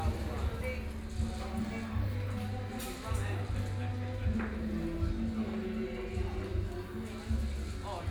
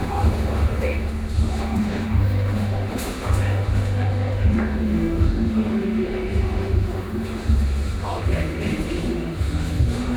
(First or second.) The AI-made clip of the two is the second